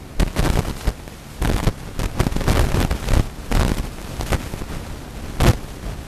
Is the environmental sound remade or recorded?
recorded